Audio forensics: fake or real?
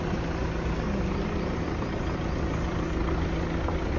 real